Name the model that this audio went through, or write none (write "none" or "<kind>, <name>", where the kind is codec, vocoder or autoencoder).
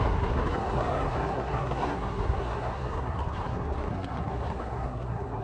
codec, SNAC